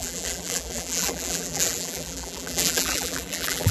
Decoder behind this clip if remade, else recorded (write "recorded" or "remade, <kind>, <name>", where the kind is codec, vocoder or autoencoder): remade, vocoder, BigVGAN v2